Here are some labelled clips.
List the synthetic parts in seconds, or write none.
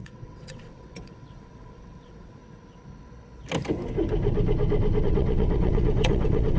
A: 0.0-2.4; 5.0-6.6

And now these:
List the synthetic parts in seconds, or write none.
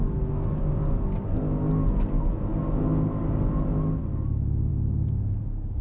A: none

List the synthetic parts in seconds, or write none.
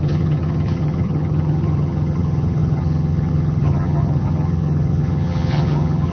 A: 0.0-6.1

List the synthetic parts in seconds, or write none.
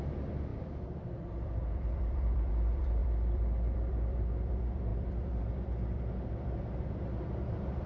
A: 0.0-7.9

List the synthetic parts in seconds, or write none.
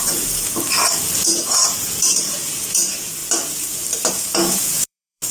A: 0.0-0.5; 1.2-3.2; 4.1-5.3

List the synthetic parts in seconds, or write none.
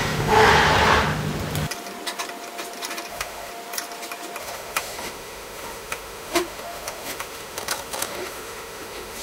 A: 0.0-0.5; 3.1-3.5; 4.4-9.2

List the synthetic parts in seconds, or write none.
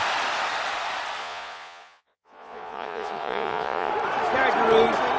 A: 1.2-3.9